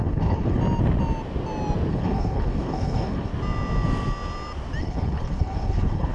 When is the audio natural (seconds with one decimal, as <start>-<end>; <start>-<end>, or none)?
0.6-1.9; 3.3-4.8